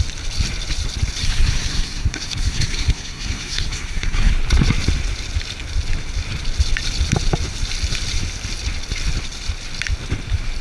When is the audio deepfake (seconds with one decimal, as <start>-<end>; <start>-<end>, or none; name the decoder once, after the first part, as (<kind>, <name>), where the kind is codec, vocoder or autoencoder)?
1.2-4.3 (codec, SNAC)